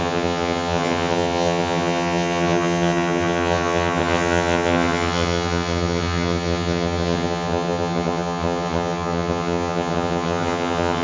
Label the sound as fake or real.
fake